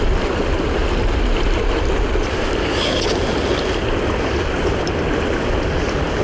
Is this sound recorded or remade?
recorded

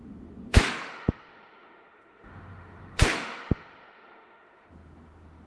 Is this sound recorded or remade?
remade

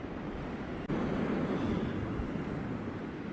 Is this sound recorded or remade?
recorded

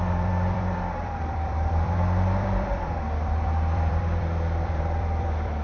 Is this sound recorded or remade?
remade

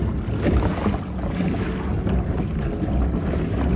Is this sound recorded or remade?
recorded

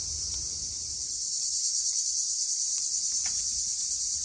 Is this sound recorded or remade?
remade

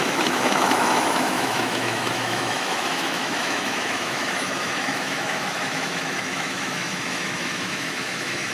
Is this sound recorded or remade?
remade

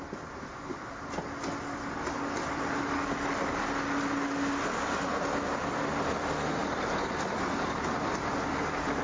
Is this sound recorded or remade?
recorded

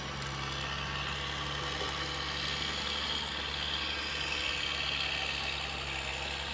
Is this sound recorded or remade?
recorded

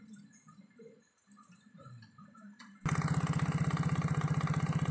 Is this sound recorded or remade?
recorded